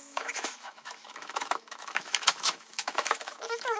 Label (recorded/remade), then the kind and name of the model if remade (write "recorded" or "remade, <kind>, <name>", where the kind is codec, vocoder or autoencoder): remade, autoencoder, DAC-VAE